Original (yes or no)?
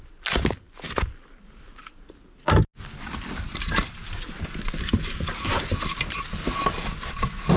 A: yes